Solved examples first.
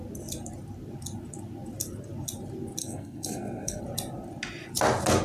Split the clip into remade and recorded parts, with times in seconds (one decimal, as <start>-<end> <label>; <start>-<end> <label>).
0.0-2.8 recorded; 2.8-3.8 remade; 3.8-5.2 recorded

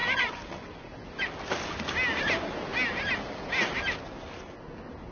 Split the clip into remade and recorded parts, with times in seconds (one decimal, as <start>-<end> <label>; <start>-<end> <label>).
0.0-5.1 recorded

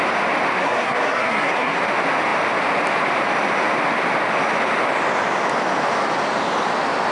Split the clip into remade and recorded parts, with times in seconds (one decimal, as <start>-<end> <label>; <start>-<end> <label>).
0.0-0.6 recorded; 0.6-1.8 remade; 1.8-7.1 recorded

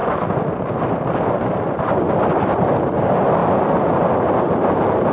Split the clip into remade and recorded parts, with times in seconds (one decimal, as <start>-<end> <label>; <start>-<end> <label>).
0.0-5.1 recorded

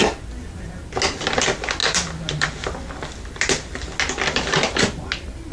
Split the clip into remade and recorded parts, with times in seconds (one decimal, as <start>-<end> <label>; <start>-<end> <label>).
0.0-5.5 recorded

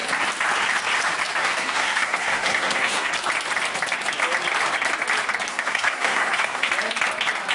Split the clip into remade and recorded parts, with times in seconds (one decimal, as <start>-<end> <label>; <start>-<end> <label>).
0.0-1.4 recorded; 1.4-3.1 remade; 3.1-5.5 recorded; 5.5-6.7 remade; 6.7-7.5 recorded

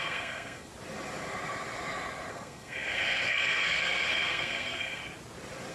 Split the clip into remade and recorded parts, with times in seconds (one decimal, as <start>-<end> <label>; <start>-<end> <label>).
0.0-0.7 remade; 0.7-2.3 recorded; 2.3-5.0 remade; 5.0-5.7 recorded